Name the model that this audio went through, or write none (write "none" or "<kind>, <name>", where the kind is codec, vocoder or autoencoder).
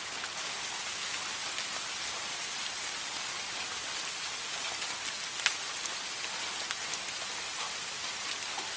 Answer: none